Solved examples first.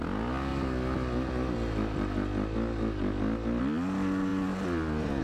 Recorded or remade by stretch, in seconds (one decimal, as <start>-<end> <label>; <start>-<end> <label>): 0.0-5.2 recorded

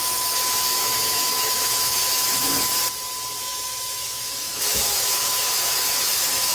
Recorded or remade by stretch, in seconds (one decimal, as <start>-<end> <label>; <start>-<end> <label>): 0.0-2.8 remade; 2.8-3.4 recorded; 3.4-6.5 remade

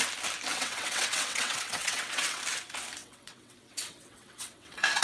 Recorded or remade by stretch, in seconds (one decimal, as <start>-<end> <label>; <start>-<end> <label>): 0.0-0.5 recorded; 0.5-2.4 remade; 2.4-3.0 recorded; 3.0-5.0 remade